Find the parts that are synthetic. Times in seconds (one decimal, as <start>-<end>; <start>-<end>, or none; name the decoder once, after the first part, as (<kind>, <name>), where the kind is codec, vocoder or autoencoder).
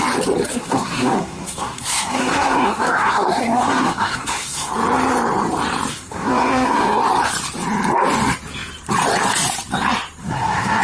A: 0.5-4.7 (codec, SNAC); 5.9-7.0; 10.2-10.8